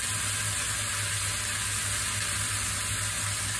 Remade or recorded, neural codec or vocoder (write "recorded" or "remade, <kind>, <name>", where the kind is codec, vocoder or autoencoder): recorded